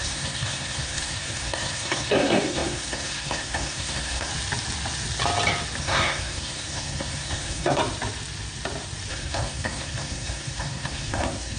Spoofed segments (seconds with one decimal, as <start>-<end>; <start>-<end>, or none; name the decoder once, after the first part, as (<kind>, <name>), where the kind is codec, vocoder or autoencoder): 0.0-4.3 (codec, SNAC); 5.8-7.8; 9.1-11.6